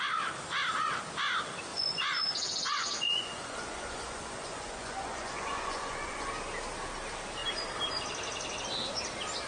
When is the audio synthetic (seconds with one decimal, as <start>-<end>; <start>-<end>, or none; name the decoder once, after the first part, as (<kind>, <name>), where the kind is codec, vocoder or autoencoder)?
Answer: 1.7-6.3 (vocoder, Vocos)